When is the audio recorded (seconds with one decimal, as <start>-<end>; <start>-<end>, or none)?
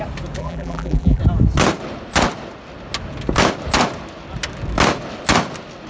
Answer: 0.0-0.4; 1.2-5.9